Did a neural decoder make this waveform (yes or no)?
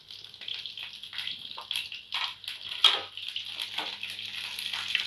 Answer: no